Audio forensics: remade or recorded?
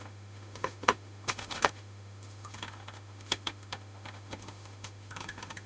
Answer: remade